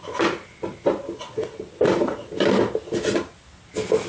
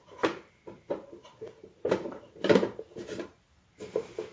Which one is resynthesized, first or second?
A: second